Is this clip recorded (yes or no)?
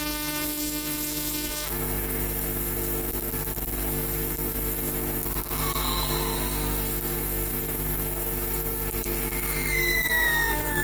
no